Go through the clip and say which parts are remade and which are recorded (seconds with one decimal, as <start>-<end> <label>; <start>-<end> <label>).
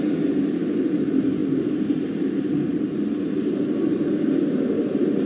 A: 0.0-5.3 recorded